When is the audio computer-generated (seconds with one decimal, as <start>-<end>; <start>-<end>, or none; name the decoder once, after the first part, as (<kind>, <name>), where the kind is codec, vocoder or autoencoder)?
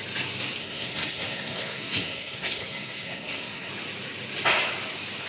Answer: 0.6-3.7 (codec, SNAC)